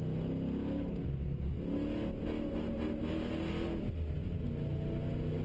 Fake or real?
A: real